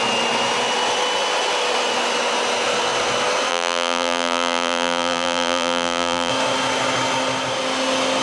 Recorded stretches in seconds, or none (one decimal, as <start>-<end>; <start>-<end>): 0.0-3.5; 6.3-8.2